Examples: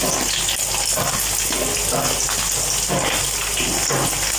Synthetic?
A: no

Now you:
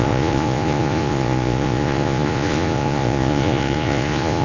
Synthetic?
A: yes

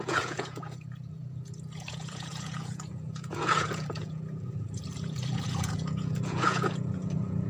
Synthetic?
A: yes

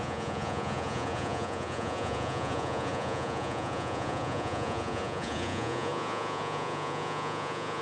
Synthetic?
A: yes